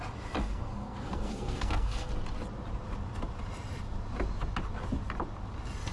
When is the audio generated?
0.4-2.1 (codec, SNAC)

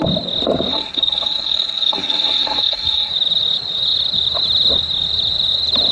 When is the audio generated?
0.7-3.1 (codec, SNAC)

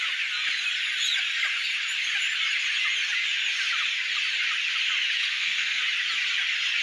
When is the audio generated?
5.3-5.8 (codec, SNAC)

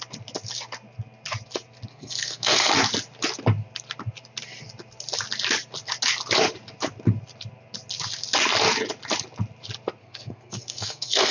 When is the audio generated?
1.9-2.7 (codec, SNAC); 10.0-11.3